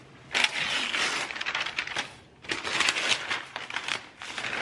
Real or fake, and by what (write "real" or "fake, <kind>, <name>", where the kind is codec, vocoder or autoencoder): real